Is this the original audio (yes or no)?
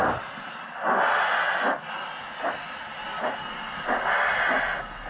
yes